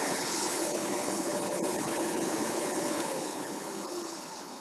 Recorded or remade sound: remade